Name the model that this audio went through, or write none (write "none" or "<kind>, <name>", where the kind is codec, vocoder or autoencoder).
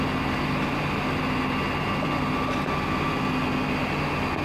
none